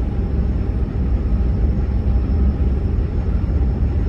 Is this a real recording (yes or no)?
no